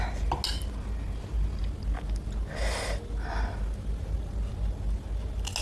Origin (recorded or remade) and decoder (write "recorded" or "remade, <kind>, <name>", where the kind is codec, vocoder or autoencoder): recorded